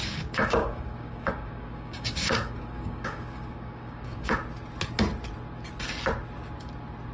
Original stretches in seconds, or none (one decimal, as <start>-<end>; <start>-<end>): 4.3-7.1